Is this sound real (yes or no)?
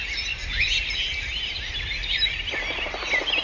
yes